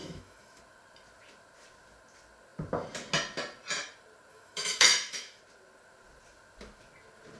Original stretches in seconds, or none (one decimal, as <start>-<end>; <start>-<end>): 0.6-4.3; 5.4-7.4